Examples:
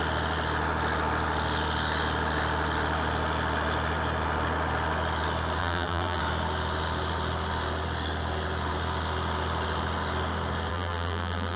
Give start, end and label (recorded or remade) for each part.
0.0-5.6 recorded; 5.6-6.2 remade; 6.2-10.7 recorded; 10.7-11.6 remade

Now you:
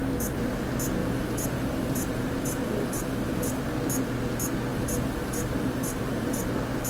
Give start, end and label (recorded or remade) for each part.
0.0-1.0 recorded; 1.0-3.6 remade; 3.6-4.7 recorded; 4.7-6.5 remade; 6.5-6.9 recorded

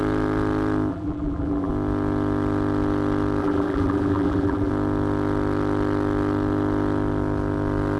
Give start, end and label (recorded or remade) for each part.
0.0-0.9 recorded; 0.9-1.7 remade; 1.7-3.4 recorded; 3.4-4.7 remade; 4.7-8.0 recorded